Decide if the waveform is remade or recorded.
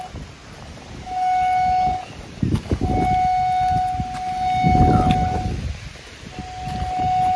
recorded